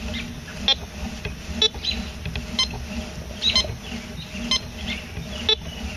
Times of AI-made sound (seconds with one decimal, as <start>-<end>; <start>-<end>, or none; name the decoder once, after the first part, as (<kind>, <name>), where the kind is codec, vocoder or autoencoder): none

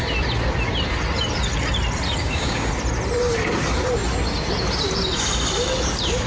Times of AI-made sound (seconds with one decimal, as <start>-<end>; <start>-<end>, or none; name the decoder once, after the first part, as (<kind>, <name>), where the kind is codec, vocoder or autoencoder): 2.2-2.7 (codec, DAC)

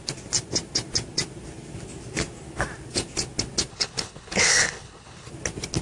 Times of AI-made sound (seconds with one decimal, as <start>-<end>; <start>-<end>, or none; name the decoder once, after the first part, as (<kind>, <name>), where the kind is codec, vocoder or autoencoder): 3.7-5.3 (codec, HILCodec)

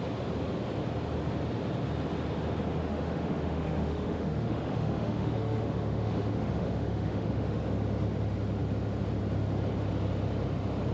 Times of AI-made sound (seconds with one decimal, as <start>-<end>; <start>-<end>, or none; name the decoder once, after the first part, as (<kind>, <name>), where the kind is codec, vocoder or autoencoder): 2.8-7.6 (autoencoder, DAC-VAE)